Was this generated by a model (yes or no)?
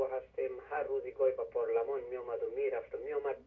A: yes